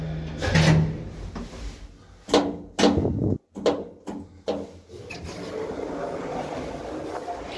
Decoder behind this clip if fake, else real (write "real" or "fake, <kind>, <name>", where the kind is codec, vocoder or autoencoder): real